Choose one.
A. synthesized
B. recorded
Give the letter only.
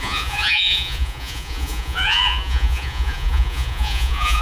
A